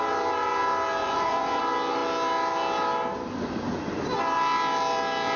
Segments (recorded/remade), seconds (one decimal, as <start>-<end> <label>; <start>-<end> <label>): 0.0-1.0 recorded; 1.0-1.6 remade; 1.6-5.4 recorded